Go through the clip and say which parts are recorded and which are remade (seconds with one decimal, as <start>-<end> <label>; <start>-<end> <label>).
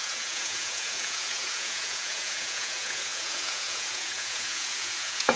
0.0-5.4 remade